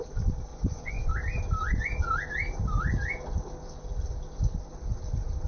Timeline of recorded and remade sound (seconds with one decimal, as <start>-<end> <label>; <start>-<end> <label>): 0.0-0.5 recorded; 0.5-1.1 remade; 1.1-5.5 recorded